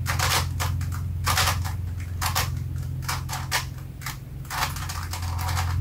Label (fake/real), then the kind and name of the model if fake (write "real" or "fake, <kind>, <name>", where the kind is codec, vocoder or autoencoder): real